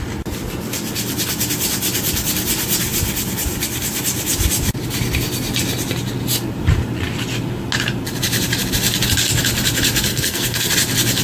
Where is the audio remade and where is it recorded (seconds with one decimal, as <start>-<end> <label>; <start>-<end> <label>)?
0.0-10.1 recorded; 10.1-10.7 remade; 10.7-11.2 recorded